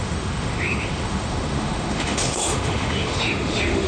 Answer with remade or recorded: remade